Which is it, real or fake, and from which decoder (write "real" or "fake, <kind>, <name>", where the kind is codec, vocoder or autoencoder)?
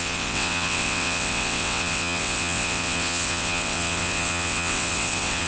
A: fake, vocoder, WaveNeXt